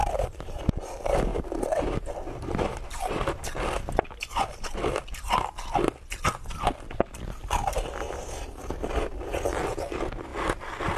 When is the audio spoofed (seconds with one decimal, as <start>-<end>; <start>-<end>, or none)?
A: 0.0-0.6; 1.3-5.3